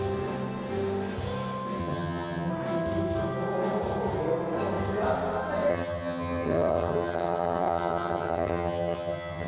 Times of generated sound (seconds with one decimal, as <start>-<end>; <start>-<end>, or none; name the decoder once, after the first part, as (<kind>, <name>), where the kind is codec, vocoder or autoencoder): 1.8-2.5 (vocoder, HiFi-GAN); 5.7-9.5